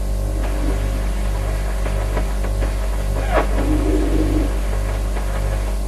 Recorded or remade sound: recorded